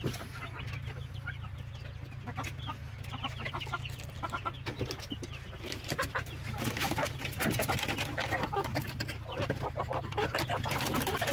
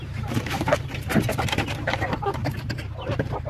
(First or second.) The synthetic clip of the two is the second